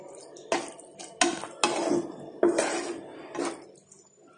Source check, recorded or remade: recorded